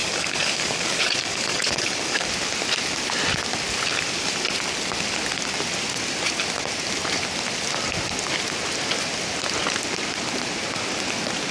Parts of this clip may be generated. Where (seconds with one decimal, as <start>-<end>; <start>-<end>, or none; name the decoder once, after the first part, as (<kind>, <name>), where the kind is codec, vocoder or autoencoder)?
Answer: 0.0-2.3 (codec, DAC)